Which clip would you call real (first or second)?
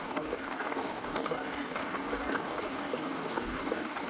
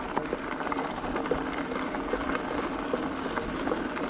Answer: second